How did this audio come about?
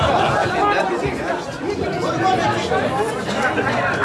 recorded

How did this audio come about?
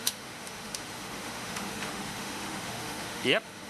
remade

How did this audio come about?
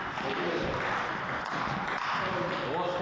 recorded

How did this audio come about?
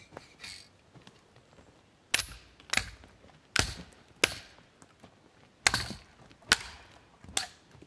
recorded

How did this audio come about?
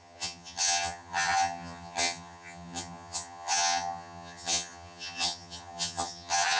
remade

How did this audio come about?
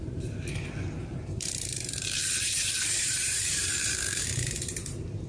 remade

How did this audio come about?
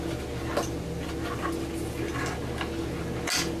recorded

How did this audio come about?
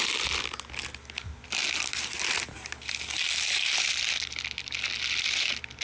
recorded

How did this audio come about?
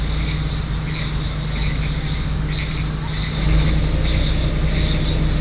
recorded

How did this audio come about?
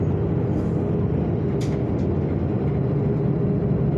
recorded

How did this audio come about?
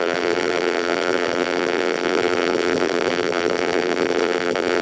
remade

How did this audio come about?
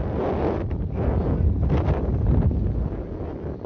remade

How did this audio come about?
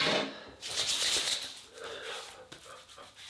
recorded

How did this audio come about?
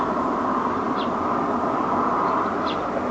recorded